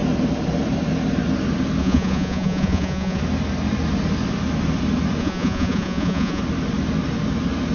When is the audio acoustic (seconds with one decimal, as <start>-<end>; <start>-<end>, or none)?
0.0-1.8; 3.2-5.2; 6.4-7.7